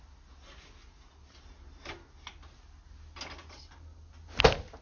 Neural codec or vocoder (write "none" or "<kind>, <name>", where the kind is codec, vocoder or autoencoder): none